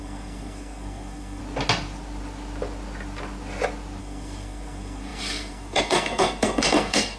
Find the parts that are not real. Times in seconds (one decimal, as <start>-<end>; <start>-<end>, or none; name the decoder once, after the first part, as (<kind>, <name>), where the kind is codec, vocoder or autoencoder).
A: 0.0-1.4 (codec, SNAC); 4.0-7.2